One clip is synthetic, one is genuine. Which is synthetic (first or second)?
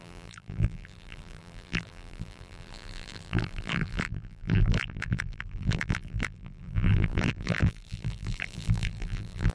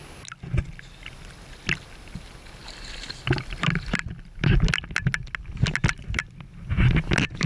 first